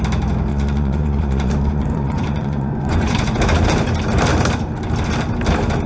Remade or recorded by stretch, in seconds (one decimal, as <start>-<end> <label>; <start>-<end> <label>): 0.0-0.5 recorded; 0.5-3.4 remade; 3.4-5.9 recorded